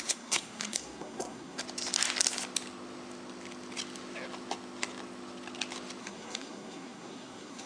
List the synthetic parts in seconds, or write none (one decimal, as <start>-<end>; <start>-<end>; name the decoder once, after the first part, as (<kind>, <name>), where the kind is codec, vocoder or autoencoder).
0.0-1.6 (codec, SNAC); 6.0-7.7